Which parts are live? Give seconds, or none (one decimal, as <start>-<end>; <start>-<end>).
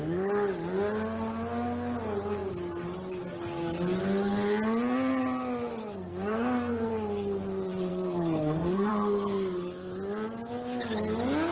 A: 0.0-5.8; 6.9-7.9; 8.9-11.5